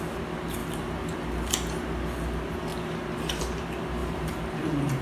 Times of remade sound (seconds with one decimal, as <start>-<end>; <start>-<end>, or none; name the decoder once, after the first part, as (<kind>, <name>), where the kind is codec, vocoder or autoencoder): 4.0-5.0 (vocoder, BigVGAN v2)